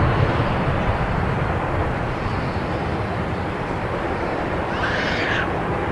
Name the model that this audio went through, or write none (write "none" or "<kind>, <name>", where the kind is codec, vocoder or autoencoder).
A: vocoder, BigVGAN v2